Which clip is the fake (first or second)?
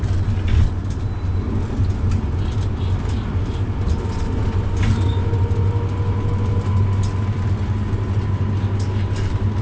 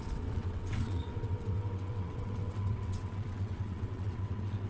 second